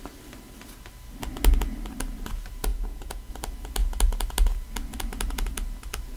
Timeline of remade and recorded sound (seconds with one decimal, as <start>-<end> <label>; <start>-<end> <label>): 0.0-2.7 recorded; 2.7-3.3 remade; 3.3-6.2 recorded